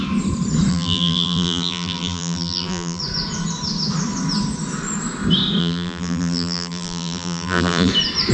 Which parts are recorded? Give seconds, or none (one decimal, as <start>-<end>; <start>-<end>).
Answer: 0.0-0.7; 3.0-5.6; 7.9-8.3